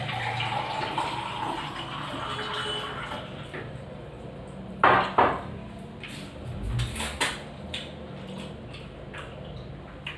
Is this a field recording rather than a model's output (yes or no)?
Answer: yes